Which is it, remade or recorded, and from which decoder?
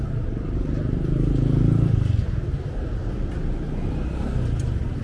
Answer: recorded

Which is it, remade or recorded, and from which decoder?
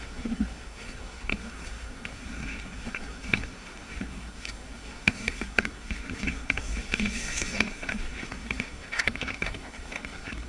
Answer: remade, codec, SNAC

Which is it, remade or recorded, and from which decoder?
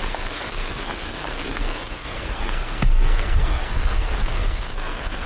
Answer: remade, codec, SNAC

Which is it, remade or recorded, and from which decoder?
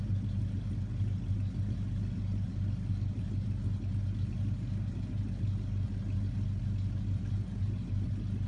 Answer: recorded